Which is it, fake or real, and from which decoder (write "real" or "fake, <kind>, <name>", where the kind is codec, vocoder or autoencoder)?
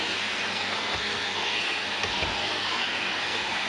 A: fake, codec, SNAC